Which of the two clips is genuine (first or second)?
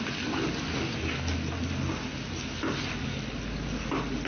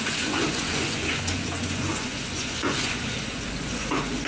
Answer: first